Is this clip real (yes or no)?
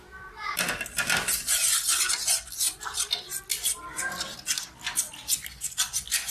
yes